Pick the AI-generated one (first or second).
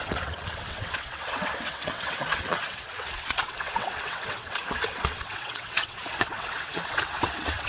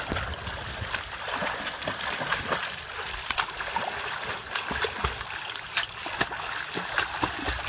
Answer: first